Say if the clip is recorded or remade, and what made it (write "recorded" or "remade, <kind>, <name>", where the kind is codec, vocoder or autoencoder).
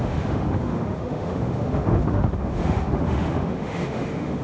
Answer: remade, autoencoder, DAC-VAE